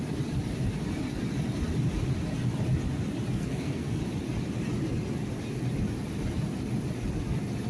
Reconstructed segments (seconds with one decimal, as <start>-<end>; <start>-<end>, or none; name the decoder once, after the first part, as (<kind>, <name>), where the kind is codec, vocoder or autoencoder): 3.3-4.0 (codec, SNAC)

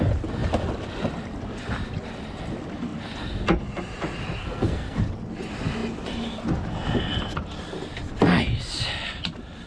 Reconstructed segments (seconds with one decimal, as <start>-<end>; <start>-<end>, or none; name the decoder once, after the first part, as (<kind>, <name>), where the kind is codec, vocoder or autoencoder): 4.4-5.0 (codec, SNAC)

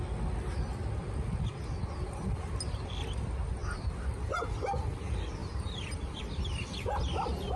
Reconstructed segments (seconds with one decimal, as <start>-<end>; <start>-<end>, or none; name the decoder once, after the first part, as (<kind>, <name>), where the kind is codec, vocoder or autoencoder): 5.4-6.2 (vocoder, BigVGAN v2)

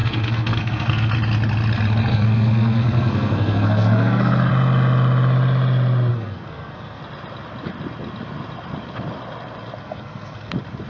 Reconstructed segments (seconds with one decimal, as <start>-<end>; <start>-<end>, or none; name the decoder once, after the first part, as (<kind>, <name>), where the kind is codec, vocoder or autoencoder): 0.0-1.1 (codec, SNAC); 2.1-4.5; 6.1-7.0; 9.8-10.5

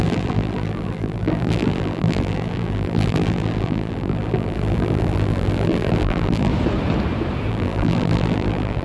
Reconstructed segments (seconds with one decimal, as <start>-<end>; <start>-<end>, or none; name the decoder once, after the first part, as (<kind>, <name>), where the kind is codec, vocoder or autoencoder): 0.0-6.5 (vocoder, BigVGAN v2); 7.5-8.8

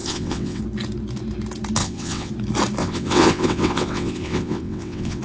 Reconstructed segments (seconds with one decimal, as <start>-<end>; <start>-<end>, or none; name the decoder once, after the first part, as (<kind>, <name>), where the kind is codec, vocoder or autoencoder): 0.0-0.6 (vocoder, WaveNeXt); 1.8-2.3; 2.8-5.2

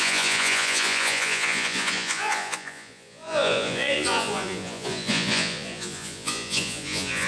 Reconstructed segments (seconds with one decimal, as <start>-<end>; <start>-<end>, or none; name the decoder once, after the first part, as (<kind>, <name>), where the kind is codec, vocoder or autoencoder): 0.0-7.3 (vocoder, Vocos)